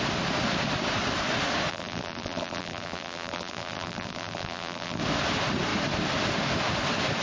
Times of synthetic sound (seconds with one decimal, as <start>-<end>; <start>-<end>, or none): 1.7-5.0